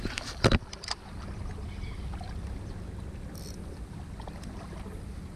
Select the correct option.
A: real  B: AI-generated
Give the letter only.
A